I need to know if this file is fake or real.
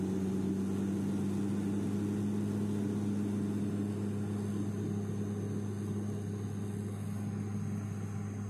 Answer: real